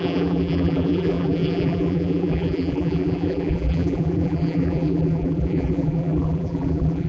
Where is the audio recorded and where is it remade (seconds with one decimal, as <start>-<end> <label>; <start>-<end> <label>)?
0.0-7.1 remade